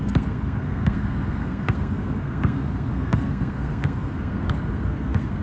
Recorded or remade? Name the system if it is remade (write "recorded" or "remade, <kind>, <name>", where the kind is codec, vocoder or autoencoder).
remade, codec, SNAC